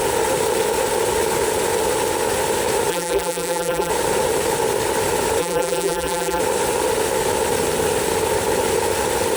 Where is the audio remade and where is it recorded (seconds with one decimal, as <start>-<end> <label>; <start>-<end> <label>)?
0.0-2.9 recorded; 2.9-3.9 remade; 3.9-5.4 recorded; 5.4-6.4 remade; 6.4-9.4 recorded